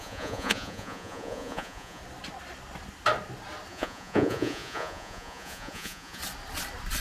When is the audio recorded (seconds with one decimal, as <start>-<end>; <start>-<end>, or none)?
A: 2.0-3.7; 6.2-7.0